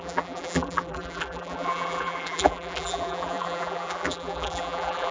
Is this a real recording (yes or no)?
no